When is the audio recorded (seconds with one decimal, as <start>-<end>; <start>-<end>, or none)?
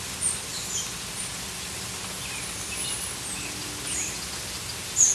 0.0-5.1